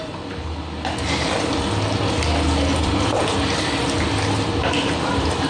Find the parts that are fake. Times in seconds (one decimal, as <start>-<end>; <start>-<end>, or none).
2.7-3.2